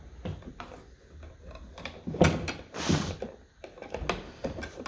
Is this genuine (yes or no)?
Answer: yes